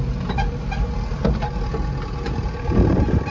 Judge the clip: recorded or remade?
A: recorded